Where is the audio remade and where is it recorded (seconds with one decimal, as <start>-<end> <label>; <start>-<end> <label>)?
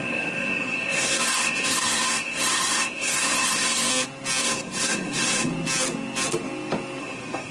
0.0-3.9 remade; 3.9-4.4 recorded; 4.4-5.5 remade; 5.5-7.0 recorded; 7.0-7.5 remade